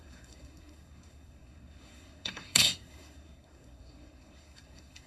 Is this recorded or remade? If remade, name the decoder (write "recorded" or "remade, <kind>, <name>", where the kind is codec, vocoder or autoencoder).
remade, codec, SNAC